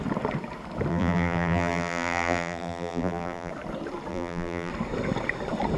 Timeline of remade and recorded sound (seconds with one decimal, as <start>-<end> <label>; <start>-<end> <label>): 0.0-0.9 recorded; 0.9-3.5 remade; 3.5-4.1 recorded; 4.1-4.7 remade; 4.7-5.8 recorded